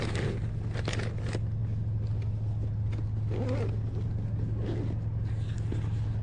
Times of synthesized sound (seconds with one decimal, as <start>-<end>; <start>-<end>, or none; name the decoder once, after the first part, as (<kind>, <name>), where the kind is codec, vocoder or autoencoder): none